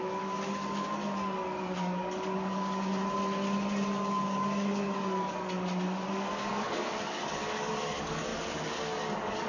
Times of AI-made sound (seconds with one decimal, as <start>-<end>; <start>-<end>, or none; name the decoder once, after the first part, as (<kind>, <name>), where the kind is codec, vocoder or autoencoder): 0.0-3.0 (codec, DAC); 4.1-9.5